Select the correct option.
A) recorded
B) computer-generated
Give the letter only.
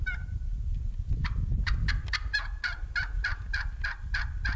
A